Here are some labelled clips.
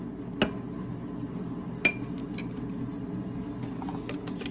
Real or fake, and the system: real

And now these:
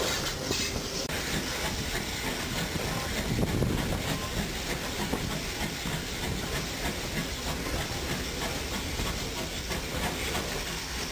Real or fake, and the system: real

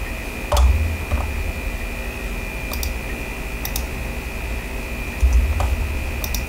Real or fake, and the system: real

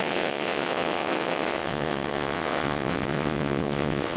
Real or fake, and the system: fake, vocoder, WaveNeXt